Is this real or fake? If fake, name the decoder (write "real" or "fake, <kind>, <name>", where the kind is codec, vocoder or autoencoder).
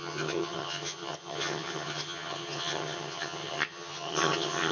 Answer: fake, vocoder, HiFi-GAN